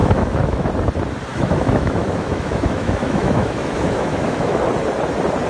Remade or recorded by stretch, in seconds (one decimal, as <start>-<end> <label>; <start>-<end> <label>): 0.0-0.7 remade; 0.7-1.3 recorded; 1.3-4.6 remade; 4.6-5.5 recorded